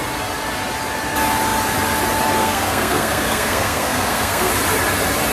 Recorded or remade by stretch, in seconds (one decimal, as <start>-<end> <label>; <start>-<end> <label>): 0.0-2.4 recorded; 2.4-4.5 remade; 4.5-5.3 recorded

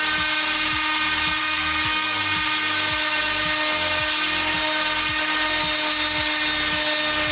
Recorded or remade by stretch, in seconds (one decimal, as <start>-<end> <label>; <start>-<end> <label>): 0.0-1.4 recorded; 1.4-2.2 remade; 2.2-7.3 recorded

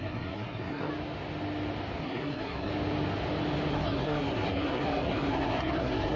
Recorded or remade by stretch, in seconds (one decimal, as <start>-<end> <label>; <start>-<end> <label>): 0.0-0.9 remade; 0.9-2.0 recorded; 2.0-2.7 remade; 2.7-3.7 recorded; 3.7-6.2 remade

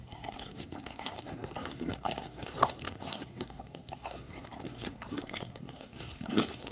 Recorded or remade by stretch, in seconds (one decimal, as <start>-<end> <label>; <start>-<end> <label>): 0.0-6.7 remade

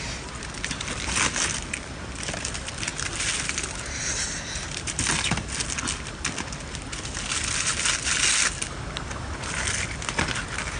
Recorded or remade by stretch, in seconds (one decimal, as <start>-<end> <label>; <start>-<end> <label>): 0.0-10.8 recorded

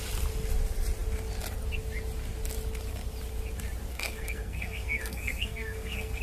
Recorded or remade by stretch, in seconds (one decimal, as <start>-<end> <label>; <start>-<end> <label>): 0.0-3.9 recorded; 3.9-6.2 remade

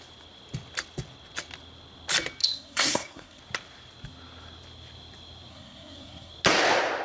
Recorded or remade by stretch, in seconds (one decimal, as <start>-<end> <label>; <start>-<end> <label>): 0.0-2.4 recorded; 2.4-3.4 remade; 3.4-5.5 recorded; 5.5-6.3 remade; 6.3-7.0 recorded